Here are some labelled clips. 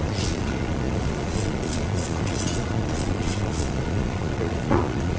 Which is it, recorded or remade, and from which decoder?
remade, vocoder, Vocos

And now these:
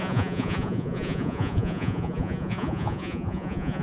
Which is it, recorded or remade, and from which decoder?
remade, vocoder, Vocos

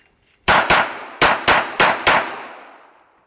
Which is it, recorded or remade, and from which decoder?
recorded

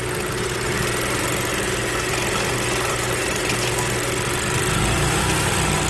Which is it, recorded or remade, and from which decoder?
recorded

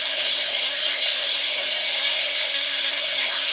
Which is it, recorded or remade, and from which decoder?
remade, codec, SNAC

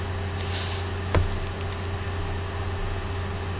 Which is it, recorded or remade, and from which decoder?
recorded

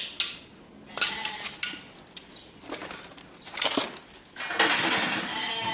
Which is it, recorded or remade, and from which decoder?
recorded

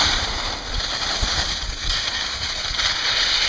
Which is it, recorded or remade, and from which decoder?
recorded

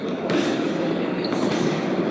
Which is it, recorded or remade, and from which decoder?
remade, codec, DAC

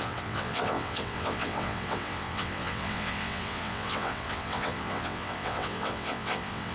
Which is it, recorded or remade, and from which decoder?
remade, vocoder, WaveNeXt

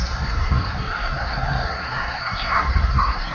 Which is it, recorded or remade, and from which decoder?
remade, codec, SNAC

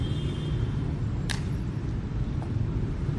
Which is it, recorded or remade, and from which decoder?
recorded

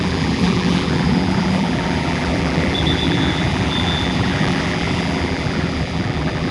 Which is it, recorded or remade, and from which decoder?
remade, vocoder, BigVGAN v2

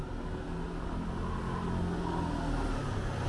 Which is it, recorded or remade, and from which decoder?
recorded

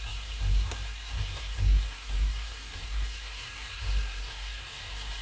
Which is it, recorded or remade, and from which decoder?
remade, codec, SNAC